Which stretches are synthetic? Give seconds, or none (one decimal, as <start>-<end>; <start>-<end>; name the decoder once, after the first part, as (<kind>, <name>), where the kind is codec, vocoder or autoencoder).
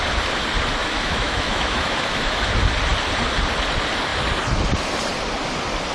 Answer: 0.8-2.5 (autoencoder, DAC-VAE)